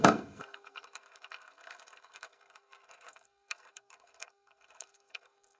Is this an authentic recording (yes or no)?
no